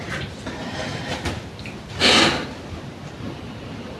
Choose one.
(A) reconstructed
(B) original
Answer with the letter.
B